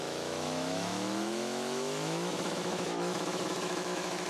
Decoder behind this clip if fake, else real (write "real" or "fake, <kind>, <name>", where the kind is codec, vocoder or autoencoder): fake, autoencoder, DAC-VAE